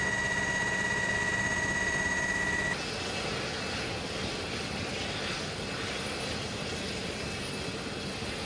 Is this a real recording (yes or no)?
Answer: yes